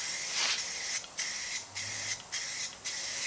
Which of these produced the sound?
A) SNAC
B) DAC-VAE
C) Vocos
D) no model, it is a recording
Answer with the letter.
D